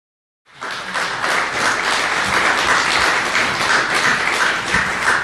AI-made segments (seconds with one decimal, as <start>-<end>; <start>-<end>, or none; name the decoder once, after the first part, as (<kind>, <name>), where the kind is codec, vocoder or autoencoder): 4.1-5.2 (vocoder, BigVGAN v2)